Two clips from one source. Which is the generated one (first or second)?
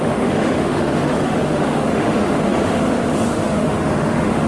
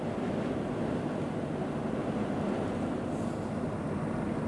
first